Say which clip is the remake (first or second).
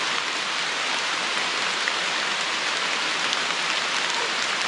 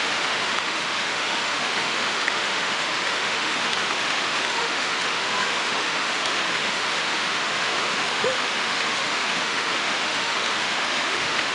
second